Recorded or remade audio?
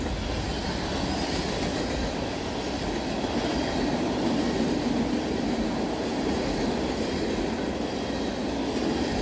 recorded